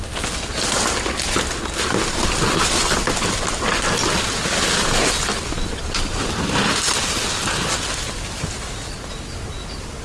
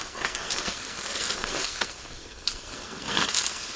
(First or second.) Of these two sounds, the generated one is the second